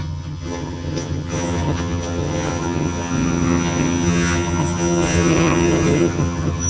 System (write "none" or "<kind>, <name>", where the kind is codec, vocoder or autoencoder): vocoder, HiFi-GAN